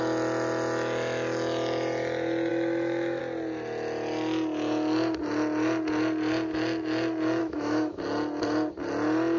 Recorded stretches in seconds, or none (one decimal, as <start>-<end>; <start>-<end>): 0.0-2.5; 3.2-7.4; 8.0-9.4